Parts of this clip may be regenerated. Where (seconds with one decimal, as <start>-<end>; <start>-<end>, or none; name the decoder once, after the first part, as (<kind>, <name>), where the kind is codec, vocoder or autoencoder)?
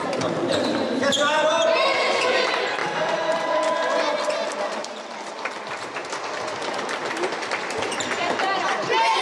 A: 0.0-2.8 (vocoder, BigVGAN v2); 4.7-6.0; 7.9-9.2